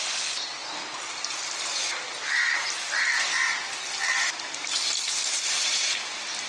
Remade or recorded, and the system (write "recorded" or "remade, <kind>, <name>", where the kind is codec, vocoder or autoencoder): recorded